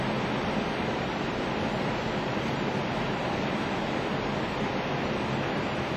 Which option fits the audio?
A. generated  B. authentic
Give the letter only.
B